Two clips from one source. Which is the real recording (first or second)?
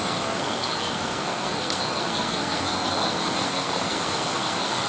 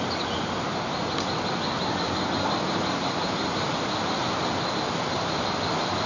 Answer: second